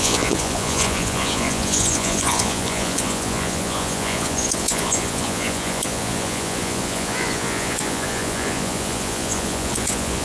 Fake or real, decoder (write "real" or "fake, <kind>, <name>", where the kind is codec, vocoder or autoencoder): fake, vocoder, Vocos